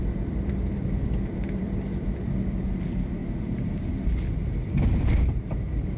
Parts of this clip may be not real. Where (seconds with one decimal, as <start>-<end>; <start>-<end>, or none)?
0.0-3.2; 4.3-6.0